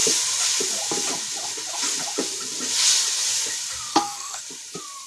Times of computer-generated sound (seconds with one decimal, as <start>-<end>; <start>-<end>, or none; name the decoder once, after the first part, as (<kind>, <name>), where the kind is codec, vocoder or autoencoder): 3.9-4.4 (codec, SNAC)